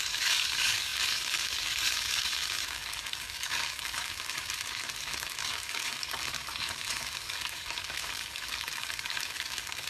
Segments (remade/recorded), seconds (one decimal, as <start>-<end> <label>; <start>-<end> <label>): 0.0-9.9 remade